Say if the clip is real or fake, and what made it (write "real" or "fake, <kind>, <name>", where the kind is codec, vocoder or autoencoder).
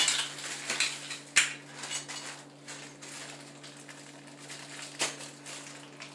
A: real